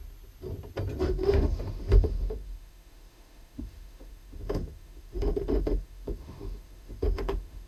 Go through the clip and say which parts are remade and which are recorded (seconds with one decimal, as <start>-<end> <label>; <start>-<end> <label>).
0.0-1.0 recorded; 1.0-7.7 remade